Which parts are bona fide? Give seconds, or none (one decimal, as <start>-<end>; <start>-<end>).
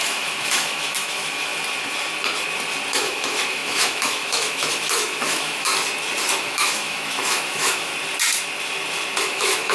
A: 1.5-2.9; 5.7-6.4; 7.9-9.2